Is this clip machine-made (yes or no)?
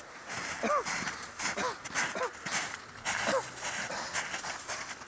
no